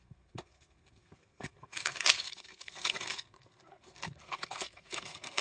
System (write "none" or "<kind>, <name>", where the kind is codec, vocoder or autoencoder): codec, SNAC